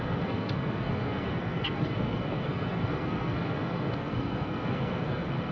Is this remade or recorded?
remade